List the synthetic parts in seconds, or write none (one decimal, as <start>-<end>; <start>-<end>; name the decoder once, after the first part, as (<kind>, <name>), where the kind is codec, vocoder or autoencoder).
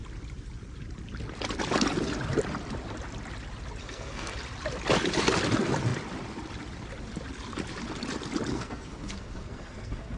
3.8-4.3 (codec, SNAC); 8.5-10.2